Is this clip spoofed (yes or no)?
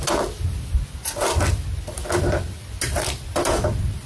no